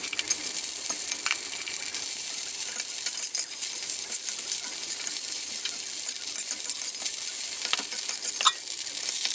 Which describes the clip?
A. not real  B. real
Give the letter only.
B